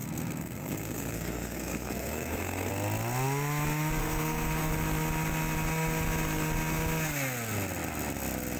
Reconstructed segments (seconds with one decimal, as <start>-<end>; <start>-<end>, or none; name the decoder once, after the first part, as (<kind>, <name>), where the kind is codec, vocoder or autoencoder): 0.0-2.7 (codec, SNAC); 4.0-4.7